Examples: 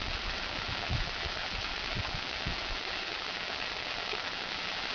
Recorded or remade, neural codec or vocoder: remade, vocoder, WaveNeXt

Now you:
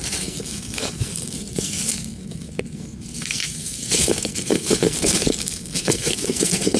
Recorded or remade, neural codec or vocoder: remade, codec, SNAC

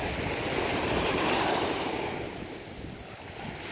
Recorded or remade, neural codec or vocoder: recorded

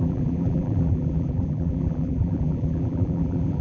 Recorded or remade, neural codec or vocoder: remade, vocoder, BigVGAN v2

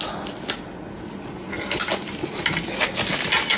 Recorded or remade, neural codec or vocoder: recorded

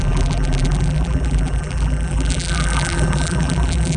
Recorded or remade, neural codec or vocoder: remade, vocoder, BigVGAN v2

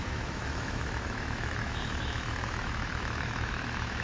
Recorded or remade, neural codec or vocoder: remade, autoencoder, DAC-VAE